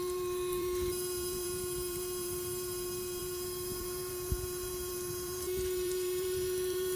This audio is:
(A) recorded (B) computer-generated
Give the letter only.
B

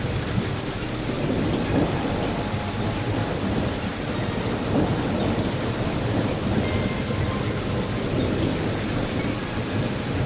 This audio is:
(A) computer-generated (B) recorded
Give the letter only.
A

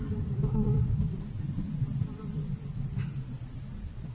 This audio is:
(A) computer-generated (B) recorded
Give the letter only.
A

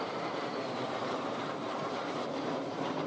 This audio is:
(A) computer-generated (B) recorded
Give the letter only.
A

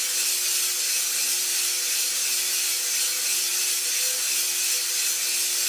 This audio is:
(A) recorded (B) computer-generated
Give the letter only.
A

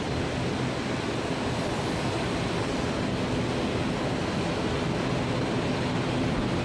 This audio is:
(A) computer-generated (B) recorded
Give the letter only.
B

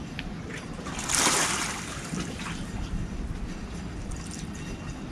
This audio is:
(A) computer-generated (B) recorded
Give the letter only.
A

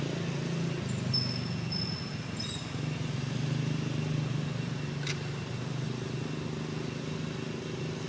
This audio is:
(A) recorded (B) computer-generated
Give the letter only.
A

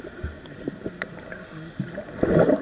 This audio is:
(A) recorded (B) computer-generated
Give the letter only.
A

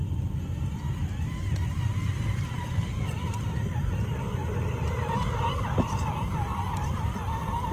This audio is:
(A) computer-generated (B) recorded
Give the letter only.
A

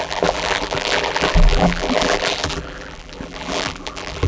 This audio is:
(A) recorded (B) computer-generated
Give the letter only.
B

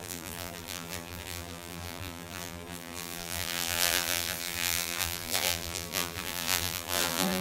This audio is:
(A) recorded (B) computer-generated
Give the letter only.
B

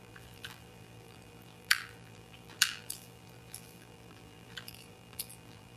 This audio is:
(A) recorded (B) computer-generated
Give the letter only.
B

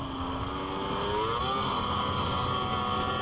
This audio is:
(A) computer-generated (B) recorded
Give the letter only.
B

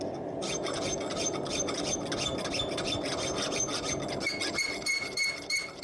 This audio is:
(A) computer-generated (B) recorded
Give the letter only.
B